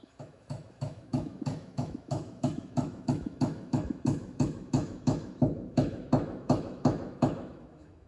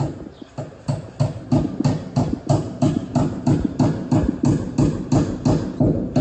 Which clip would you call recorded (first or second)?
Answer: second